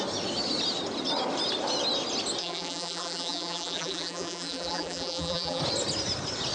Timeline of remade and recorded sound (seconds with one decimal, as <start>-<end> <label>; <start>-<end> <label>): 0.0-2.4 recorded; 2.4-5.6 remade; 5.6-6.5 recorded